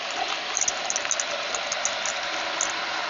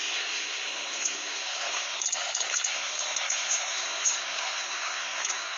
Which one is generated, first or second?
second